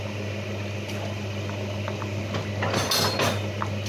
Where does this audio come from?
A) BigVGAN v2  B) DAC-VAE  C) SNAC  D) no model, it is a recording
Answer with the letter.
D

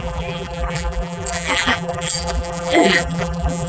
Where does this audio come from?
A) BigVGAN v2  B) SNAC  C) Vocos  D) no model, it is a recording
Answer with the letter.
A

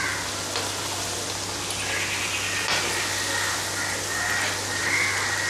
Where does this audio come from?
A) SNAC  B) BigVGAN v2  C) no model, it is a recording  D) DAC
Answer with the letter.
C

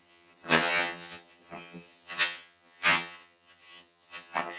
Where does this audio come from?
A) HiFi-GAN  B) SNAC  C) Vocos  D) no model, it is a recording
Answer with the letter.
A